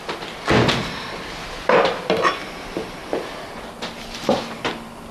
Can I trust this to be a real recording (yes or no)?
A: yes